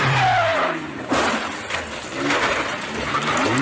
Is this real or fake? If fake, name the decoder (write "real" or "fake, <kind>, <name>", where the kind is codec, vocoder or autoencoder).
real